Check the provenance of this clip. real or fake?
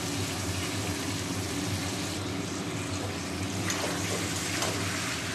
real